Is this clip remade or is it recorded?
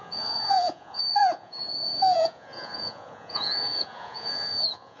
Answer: remade